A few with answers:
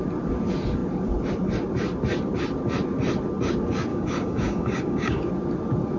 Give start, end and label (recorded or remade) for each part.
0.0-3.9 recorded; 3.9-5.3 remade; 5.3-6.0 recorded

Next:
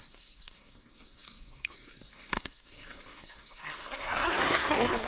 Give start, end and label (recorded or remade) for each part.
0.0-5.1 remade

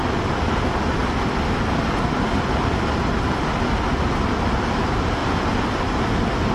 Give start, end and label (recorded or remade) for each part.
0.0-1.0 recorded; 1.0-1.9 remade; 1.9-5.2 recorded; 5.2-6.5 remade

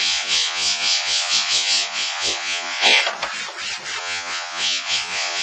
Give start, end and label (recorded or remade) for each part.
0.0-3.0 remade; 3.0-4.0 recorded; 4.0-5.4 remade

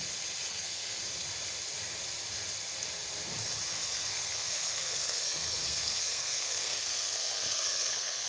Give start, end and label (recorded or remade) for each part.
0.0-0.5 recorded; 0.5-1.0 remade; 1.0-3.7 recorded; 3.7-8.3 remade